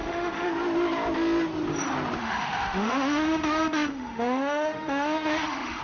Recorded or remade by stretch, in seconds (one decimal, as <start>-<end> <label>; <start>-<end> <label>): 0.0-0.5 remade; 0.5-2.2 recorded; 2.2-5.8 remade